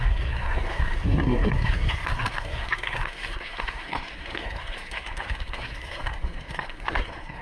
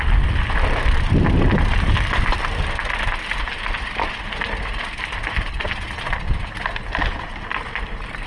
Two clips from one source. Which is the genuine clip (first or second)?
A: second